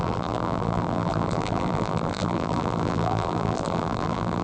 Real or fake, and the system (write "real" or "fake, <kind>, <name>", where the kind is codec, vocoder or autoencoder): fake, vocoder, BigVGAN v2